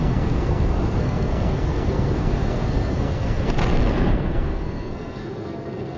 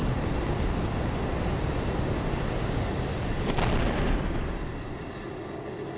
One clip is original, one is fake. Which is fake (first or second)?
first